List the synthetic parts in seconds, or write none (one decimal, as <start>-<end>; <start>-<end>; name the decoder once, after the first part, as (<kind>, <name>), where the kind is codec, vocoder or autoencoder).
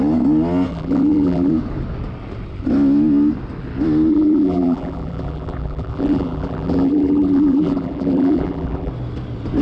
0.7-1.5 (vocoder, BigVGAN v2); 4.1-8.9